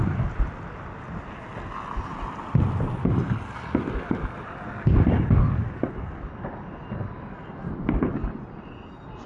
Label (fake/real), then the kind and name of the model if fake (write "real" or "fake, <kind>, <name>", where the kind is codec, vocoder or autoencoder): real